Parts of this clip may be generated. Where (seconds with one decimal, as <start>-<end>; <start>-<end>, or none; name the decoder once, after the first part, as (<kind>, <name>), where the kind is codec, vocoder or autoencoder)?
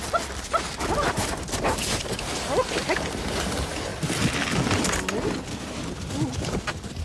none